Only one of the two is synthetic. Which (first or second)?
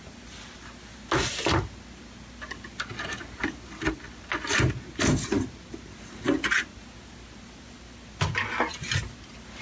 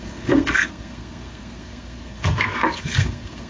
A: second